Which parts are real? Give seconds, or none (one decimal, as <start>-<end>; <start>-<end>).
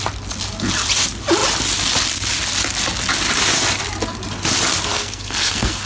0.0-4.9